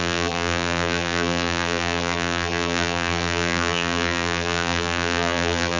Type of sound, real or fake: fake